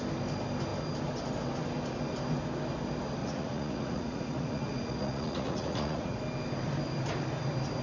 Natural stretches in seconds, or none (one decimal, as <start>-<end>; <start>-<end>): 0.0-3.2; 6.2-7.8